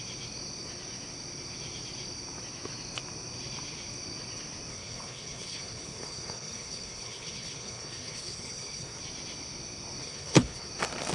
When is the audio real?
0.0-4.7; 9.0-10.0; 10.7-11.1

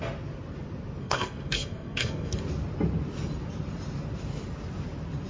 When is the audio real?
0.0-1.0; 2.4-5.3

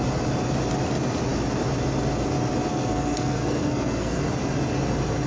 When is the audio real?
0.0-2.7; 4.2-5.3

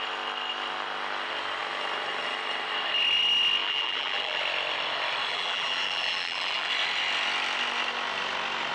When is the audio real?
0.0-3.6; 4.4-5.3; 6.7-8.7

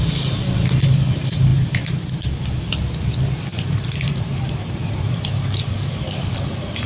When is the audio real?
0.0-3.5

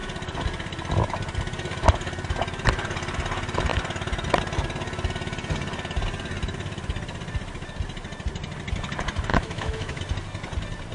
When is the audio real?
0.0-9.3; 10.0-10.9